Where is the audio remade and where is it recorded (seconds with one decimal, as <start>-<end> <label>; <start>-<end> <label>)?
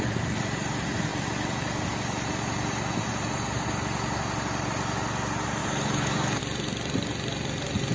0.0-5.6 recorded; 5.6-6.4 remade; 6.4-7.9 recorded